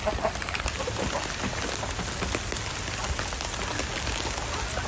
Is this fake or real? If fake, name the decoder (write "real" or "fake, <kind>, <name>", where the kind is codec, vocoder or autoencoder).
real